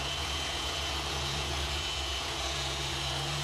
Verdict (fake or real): fake